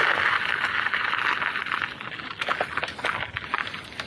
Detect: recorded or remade recorded